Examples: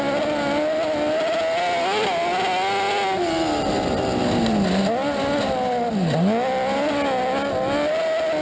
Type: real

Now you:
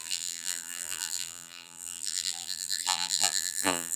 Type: fake